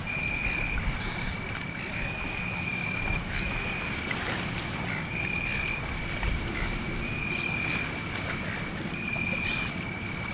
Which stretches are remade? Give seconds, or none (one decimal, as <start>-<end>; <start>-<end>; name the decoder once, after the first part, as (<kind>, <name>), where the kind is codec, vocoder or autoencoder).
1.9-3.6 (autoencoder, DAC-VAE)